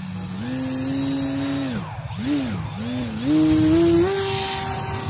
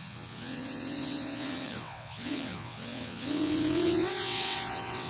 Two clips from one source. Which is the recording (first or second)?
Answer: first